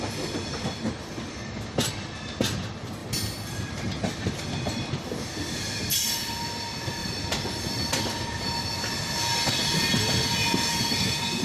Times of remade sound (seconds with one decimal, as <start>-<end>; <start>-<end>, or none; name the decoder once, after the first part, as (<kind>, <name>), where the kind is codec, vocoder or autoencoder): 10.7-11.4 (codec, SNAC)